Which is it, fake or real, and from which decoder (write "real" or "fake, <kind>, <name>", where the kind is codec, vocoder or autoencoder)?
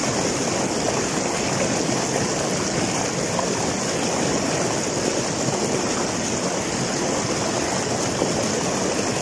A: real